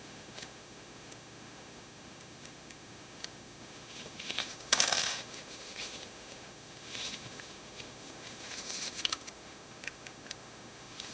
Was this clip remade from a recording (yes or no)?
yes